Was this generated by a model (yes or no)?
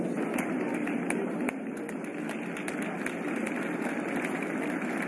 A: no